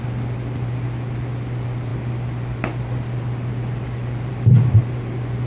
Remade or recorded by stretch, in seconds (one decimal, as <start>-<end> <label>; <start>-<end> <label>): 0.0-5.5 recorded

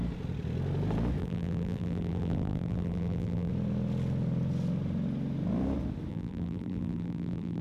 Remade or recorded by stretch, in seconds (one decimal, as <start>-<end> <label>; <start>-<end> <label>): 0.0-1.2 recorded; 1.2-3.5 remade; 3.5-6.1 recorded; 6.1-7.6 remade

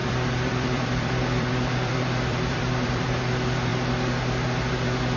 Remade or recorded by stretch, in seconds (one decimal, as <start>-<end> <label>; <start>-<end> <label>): 0.0-3.1 remade; 3.1-5.2 recorded